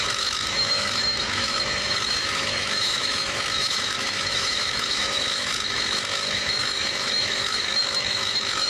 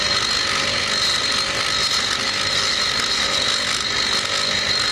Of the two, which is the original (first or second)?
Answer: second